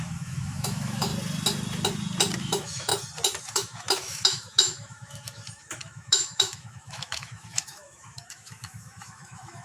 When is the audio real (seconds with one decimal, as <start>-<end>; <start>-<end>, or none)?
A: 1.1-2.4; 2.9-3.4